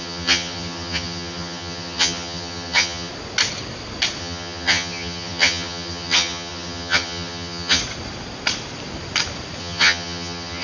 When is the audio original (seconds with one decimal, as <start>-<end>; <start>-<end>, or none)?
3.1-4.2; 7.8-9.6